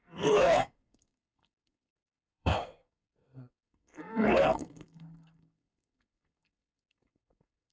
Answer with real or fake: fake